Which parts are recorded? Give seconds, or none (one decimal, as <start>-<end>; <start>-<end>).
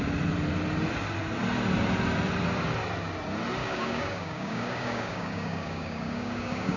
0.0-3.6